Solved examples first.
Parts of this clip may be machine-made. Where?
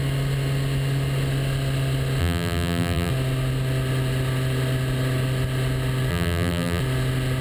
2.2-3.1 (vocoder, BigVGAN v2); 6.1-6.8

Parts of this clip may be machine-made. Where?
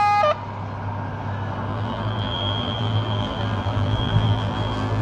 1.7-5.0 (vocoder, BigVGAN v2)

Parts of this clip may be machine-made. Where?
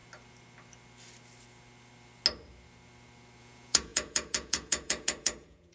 3.4-5.7 (vocoder, Vocos)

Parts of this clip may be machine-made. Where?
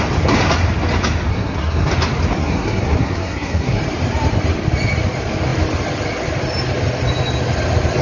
1.3-1.9 (codec, SNAC); 2.4-3.8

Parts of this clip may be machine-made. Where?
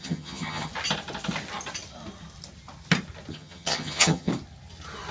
0.0-0.7 (vocoder, HiFi-GAN); 3.3-4.3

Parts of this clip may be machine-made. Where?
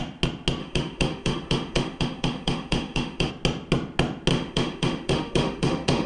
0.6-3.3 (autoencoder, DAC-VAE); 4.3-6.1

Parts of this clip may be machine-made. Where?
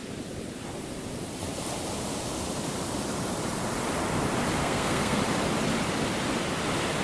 4.6-5.2 (codec, SNAC)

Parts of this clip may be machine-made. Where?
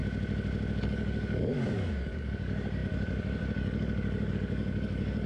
0.8-5.3 (codec, DAC)